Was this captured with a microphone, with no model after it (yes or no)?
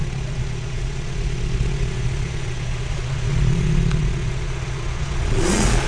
no